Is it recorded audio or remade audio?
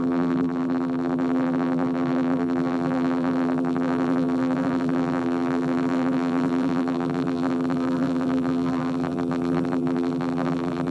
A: remade